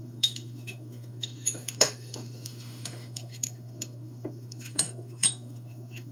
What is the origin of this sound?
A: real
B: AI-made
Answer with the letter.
B